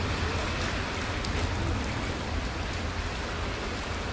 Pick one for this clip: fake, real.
real